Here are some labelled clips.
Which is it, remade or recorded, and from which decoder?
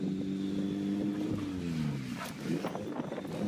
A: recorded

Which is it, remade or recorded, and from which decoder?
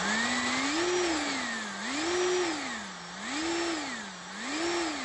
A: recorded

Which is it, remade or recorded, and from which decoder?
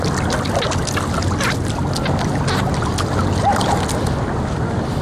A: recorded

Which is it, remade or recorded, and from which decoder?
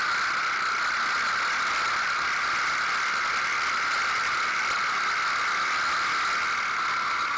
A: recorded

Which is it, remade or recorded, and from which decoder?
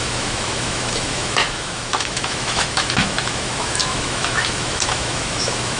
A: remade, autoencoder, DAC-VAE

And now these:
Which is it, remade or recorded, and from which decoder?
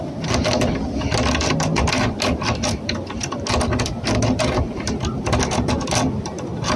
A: recorded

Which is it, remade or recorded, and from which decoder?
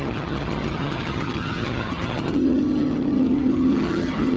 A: remade, vocoder, HiFi-GAN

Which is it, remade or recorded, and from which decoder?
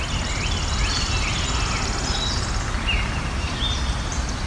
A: recorded